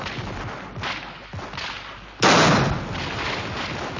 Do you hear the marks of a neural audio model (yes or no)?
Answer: no